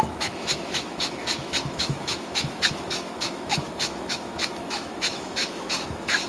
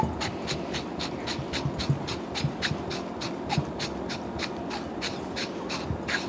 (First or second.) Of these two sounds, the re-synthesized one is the first